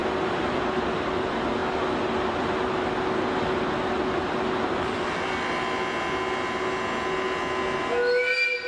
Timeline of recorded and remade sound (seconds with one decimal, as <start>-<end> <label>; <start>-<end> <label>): 0.0-8.7 recorded